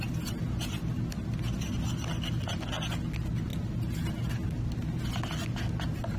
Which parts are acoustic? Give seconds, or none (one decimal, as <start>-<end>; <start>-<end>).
0.0-6.2